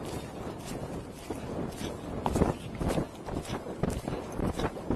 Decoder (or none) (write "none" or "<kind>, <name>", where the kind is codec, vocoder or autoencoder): none